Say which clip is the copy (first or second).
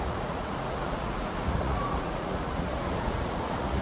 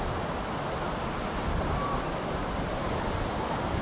first